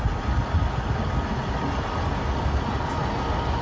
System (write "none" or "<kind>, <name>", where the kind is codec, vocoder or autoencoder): none